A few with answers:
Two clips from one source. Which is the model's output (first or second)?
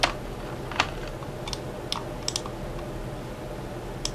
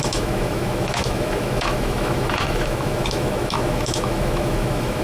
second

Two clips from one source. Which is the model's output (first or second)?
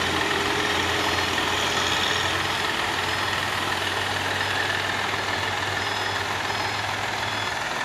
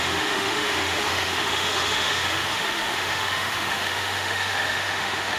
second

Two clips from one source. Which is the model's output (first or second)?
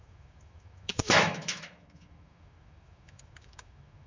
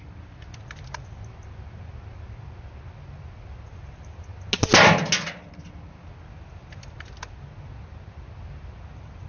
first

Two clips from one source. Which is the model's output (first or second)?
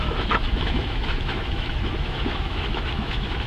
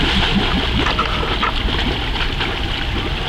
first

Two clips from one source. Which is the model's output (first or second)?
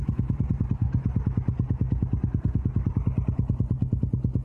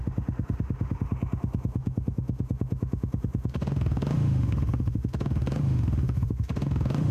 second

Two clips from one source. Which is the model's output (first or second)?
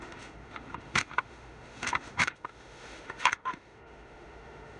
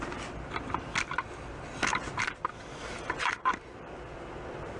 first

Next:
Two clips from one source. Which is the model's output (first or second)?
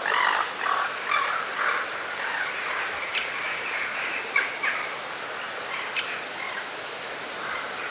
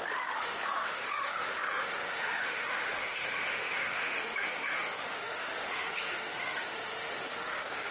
second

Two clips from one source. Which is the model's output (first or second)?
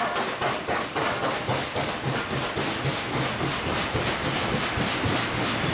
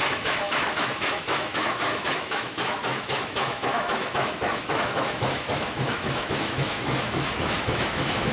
second